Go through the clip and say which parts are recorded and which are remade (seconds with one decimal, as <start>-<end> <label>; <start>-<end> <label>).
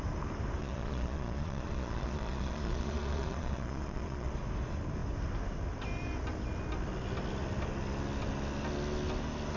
0.0-0.6 recorded; 0.6-4.3 remade; 4.3-9.6 recorded